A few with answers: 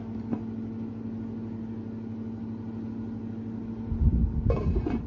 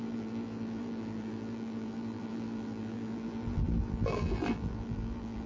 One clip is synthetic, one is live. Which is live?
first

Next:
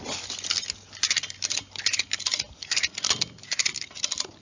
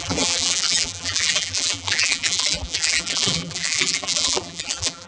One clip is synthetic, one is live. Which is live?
first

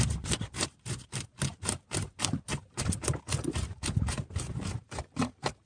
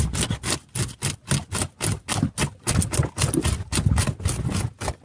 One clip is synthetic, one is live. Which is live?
second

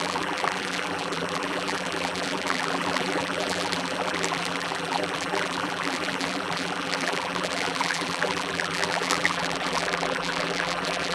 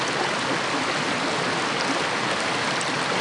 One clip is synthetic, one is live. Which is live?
second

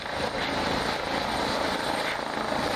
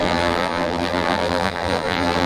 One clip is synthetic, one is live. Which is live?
first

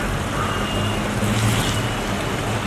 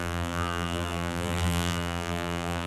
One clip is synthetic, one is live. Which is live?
first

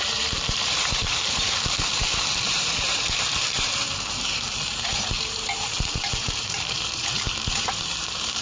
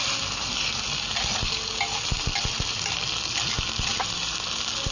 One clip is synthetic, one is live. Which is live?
second